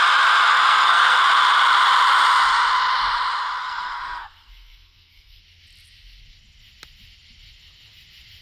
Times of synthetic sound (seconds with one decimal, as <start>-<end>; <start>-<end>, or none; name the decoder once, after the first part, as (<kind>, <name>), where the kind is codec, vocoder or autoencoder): 0.5-1.2 (codec, SNAC); 3.6-5.4